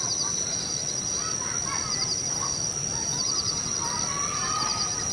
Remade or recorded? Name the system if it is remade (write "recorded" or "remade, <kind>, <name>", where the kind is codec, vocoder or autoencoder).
recorded